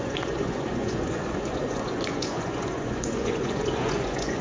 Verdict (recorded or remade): remade